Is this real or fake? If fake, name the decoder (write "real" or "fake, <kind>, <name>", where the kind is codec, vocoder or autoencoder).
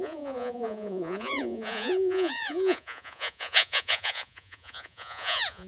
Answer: fake, vocoder, Vocos